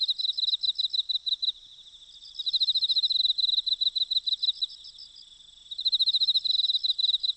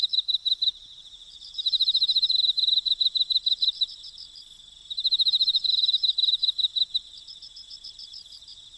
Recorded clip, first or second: first